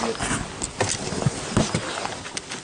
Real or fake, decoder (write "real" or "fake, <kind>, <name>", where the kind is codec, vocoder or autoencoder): real